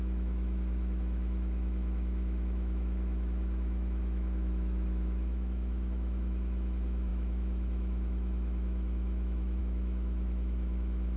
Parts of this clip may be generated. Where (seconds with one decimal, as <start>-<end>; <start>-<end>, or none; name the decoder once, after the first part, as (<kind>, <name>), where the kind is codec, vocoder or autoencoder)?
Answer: 0.0-11.2 (autoencoder, DAC-VAE)